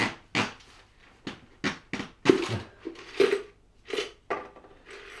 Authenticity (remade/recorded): recorded